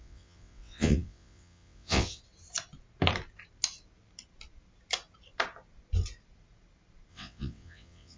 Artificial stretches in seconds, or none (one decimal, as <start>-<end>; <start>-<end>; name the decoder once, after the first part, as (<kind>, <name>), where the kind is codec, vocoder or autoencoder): 0.0-2.2 (vocoder, WaveNeXt); 7.1-8.2